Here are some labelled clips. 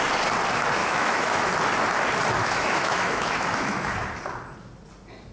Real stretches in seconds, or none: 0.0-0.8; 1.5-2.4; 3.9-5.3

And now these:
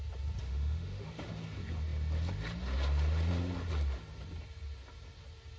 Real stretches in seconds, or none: 0.0-0.4; 1.3-5.6

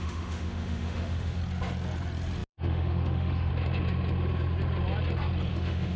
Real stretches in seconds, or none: 1.4-2.5; 3.5-5.5

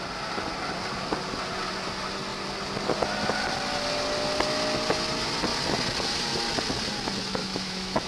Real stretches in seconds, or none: 0.0-7.4

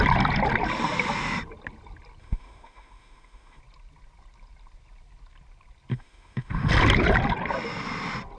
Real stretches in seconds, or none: 0.0-2.2; 3.6-5.9; 6.7-8.4